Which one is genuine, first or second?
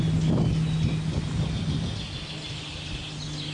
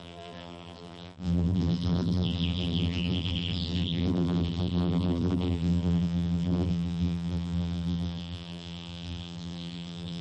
first